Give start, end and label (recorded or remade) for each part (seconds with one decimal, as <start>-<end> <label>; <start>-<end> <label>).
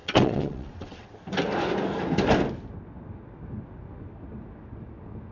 0.0-1.1 remade; 1.1-5.3 recorded